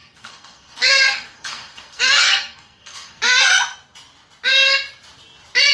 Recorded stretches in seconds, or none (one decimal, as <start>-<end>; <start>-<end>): 3.2-5.7